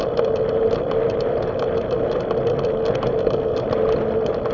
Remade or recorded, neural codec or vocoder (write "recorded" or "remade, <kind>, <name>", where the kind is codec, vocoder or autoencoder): recorded